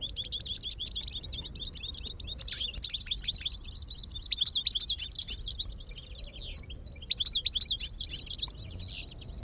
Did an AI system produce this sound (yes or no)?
no